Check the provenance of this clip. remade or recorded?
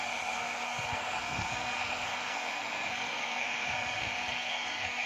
remade